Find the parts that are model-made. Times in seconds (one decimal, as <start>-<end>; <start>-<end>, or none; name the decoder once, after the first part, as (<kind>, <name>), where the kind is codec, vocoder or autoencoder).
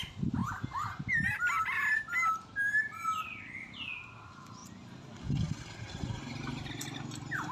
none